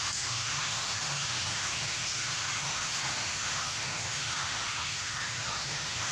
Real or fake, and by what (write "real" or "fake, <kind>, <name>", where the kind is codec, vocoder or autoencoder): fake, autoencoder, DAC-VAE